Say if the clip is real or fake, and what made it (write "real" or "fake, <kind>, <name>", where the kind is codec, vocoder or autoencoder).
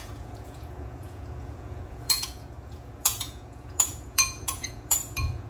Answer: fake, vocoder, Vocos